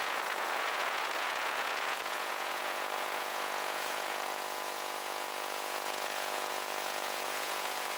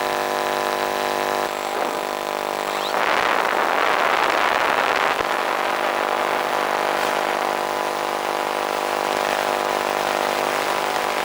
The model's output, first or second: first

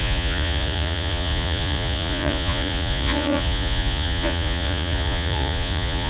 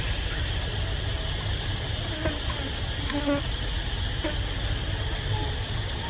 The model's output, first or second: first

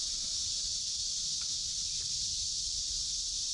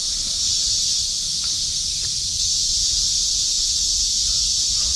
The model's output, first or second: second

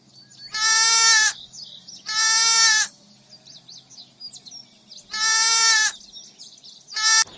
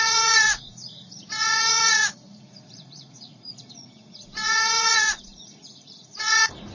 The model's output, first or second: second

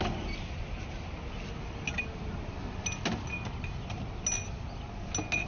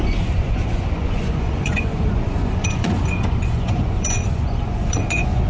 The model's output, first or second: second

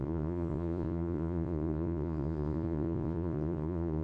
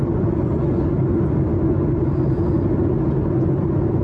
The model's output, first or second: first